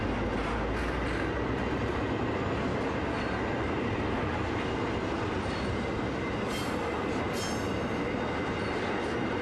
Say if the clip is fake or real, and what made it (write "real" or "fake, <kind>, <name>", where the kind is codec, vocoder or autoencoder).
real